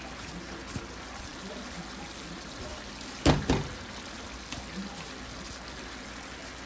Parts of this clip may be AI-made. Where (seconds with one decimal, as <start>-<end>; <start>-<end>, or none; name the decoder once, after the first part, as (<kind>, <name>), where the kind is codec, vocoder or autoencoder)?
none